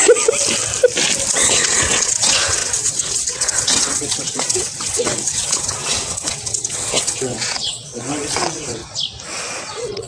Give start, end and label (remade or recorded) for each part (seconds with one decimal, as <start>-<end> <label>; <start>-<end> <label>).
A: 0.0-1.3 recorded; 1.3-8.8 remade; 8.8-9.6 recorded; 9.6-10.1 remade

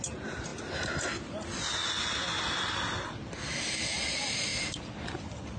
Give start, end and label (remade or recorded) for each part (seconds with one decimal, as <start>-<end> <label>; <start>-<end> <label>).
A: 0.0-5.6 recorded

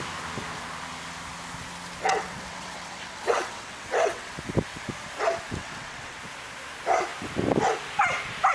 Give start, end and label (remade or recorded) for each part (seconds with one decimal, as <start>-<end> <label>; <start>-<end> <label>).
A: 0.0-2.0 recorded; 2.0-4.3 remade; 4.3-5.6 recorded; 5.6-6.2 remade; 6.2-8.5 recorded